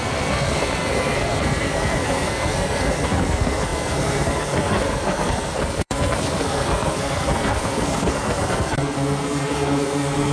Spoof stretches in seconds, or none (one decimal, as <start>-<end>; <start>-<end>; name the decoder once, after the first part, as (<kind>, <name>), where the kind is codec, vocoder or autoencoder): 0.0-10.3 (codec, SNAC)